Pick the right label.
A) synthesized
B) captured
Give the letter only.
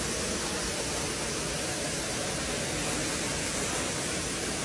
B